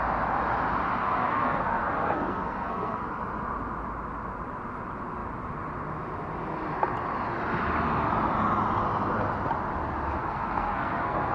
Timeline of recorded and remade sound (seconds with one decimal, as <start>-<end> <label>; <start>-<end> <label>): 0.0-1.0 recorded; 1.0-3.2 remade; 3.2-10.2 recorded; 10.2-11.3 remade